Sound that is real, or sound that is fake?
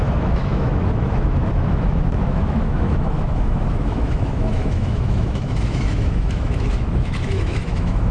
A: fake